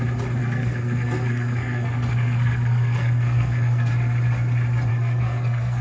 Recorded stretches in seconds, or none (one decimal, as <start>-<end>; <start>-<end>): 0.0-0.4; 3.9-4.9

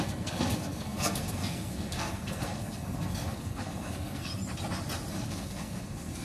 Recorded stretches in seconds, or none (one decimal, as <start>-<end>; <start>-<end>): 4.3-5.1

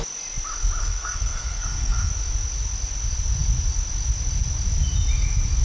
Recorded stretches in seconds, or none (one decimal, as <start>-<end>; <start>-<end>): 0.0-0.8; 2.1-5.6

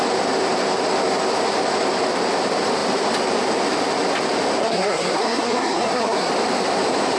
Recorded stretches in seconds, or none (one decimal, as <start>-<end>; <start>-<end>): 0.0-4.6; 6.3-7.2

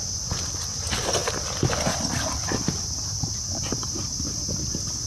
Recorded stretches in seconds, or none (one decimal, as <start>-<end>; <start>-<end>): 0.0-5.1

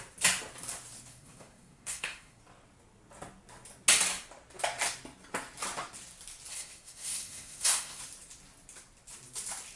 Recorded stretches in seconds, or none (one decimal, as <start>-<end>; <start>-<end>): 0.0-1.1; 2.4-6.5; 8.0-9.8